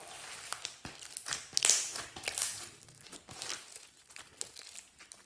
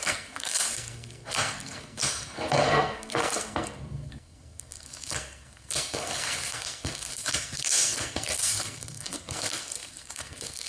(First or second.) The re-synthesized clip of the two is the second